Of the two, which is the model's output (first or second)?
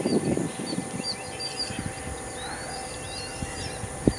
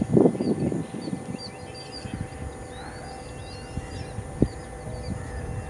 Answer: first